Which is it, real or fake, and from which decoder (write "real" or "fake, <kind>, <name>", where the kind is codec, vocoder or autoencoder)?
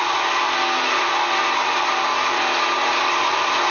real